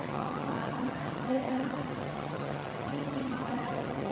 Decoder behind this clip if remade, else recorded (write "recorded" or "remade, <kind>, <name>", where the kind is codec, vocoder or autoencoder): remade, vocoder, HiFi-GAN